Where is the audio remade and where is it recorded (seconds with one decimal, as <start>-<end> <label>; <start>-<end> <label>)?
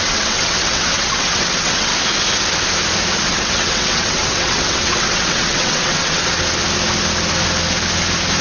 0.0-1.9 remade; 1.9-3.2 recorded; 3.2-6.2 remade; 6.2-8.4 recorded